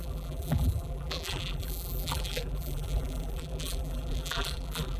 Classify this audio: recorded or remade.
remade